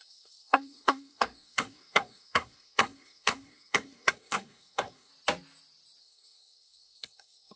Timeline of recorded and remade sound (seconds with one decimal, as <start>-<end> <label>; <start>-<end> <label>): 0.0-5.1 remade; 5.1-6.0 recorded; 6.0-7.6 remade